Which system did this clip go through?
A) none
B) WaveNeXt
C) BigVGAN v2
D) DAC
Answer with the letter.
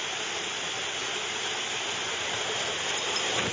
A